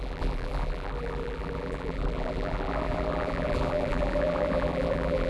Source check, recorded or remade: remade